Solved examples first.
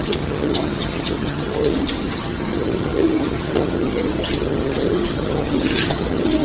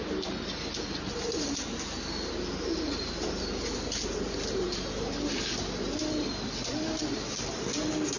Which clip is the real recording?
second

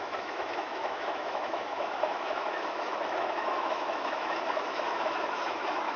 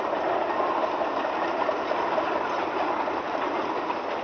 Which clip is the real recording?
second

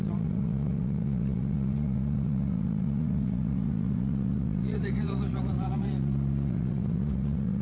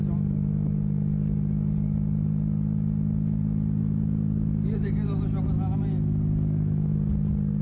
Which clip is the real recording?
second